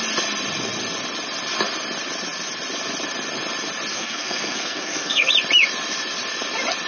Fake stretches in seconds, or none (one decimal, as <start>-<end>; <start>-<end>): 3.9-5.3